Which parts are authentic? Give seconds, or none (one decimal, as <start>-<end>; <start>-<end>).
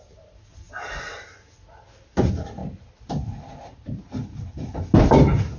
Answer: 0.0-5.6